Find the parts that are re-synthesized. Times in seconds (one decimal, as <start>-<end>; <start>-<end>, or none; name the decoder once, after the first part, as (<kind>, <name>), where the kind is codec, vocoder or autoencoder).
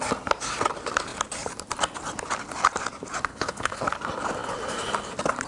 3.3-3.8 (codec, HILCodec)